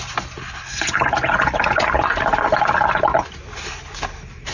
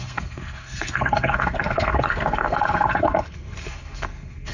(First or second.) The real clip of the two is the first